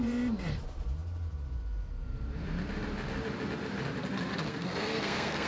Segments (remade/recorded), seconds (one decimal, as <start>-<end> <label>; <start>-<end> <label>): 0.0-4.5 recorded; 4.5-5.5 remade

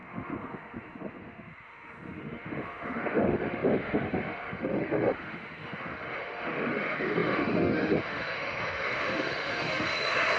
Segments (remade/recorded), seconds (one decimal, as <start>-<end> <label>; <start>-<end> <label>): 0.0-10.4 remade

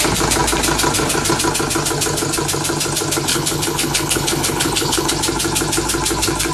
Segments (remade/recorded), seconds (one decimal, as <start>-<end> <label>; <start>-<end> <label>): 0.0-3.3 recorded; 3.3-5.1 remade; 5.1-6.5 recorded

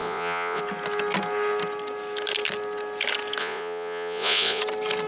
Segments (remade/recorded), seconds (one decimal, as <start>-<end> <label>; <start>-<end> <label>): 0.0-0.6 remade; 0.6-3.4 recorded; 3.4-4.6 remade; 4.6-5.1 recorded

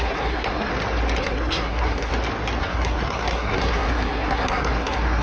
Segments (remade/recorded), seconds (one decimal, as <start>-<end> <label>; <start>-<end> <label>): 0.0-0.7 remade; 0.7-1.2 recorded; 1.2-2.1 remade; 2.1-2.6 recorded; 2.6-5.2 remade

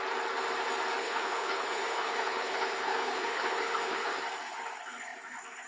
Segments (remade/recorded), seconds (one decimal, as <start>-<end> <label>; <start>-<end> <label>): 0.0-1.0 recorded; 1.0-4.2 remade; 4.2-5.7 recorded

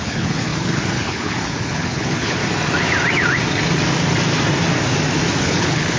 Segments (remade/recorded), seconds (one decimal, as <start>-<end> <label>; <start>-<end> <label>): 0.0-2.4 remade; 2.4-5.4 recorded; 5.4-6.0 remade

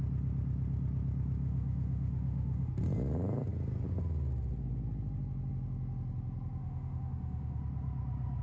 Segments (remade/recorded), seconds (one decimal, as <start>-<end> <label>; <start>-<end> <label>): 0.0-1.4 recorded; 1.4-2.7 remade; 2.7-6.6 recorded; 6.6-7.6 remade; 7.6-8.4 recorded